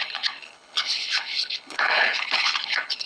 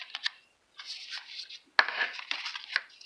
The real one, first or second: second